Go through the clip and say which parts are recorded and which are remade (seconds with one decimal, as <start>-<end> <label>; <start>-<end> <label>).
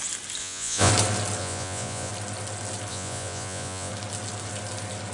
0.0-0.4 recorded; 0.4-0.9 remade; 0.9-1.4 recorded; 1.4-2.1 remade; 2.1-2.9 recorded; 2.9-3.9 remade; 3.9-5.1 recorded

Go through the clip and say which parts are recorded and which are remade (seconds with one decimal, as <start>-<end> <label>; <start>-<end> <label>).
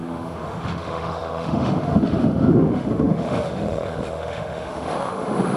0.0-5.6 remade